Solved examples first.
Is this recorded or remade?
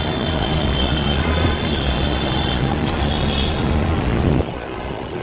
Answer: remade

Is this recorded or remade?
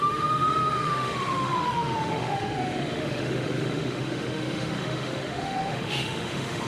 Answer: remade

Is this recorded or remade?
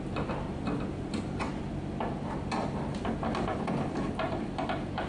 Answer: recorded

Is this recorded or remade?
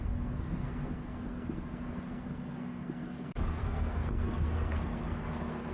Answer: remade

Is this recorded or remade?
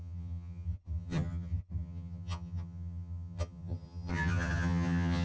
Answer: remade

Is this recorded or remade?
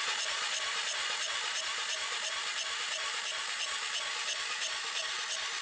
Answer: recorded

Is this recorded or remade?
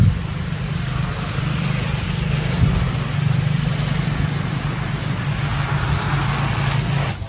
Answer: recorded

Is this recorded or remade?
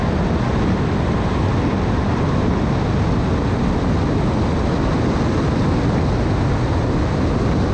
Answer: recorded